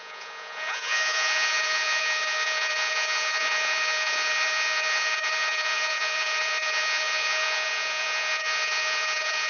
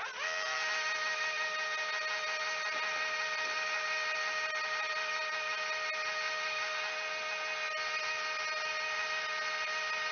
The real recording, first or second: second